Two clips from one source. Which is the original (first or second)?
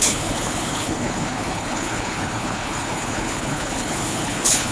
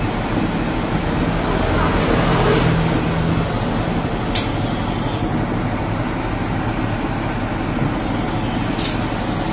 second